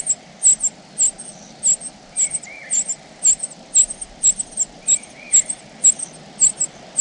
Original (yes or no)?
yes